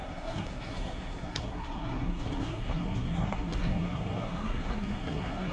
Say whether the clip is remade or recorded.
remade